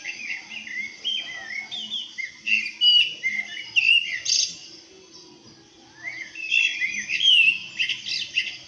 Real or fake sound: real